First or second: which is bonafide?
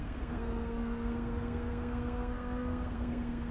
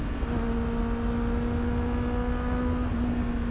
second